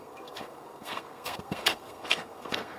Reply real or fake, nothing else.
fake